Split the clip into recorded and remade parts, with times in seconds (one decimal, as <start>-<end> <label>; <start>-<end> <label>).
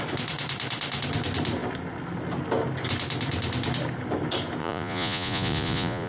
0.0-4.6 recorded; 4.6-6.1 remade